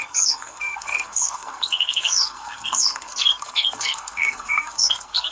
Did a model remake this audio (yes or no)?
yes